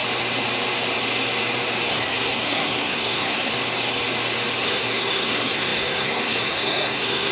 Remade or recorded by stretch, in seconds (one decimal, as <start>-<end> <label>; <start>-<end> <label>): 0.0-1.9 recorded; 1.9-3.5 remade; 3.5-4.6 recorded; 4.6-7.3 remade